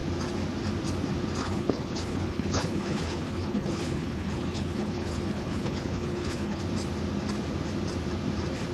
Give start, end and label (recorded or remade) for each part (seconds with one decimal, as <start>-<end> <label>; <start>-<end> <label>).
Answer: 0.0-1.4 recorded; 1.4-6.6 remade; 6.6-8.7 recorded